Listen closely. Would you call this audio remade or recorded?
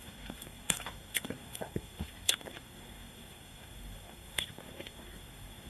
remade